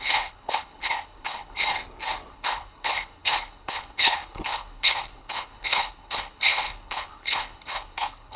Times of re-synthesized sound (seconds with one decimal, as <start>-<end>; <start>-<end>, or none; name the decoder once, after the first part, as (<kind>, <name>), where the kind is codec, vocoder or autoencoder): 0.0-1.6 (codec, HILCodec); 2.3-8.4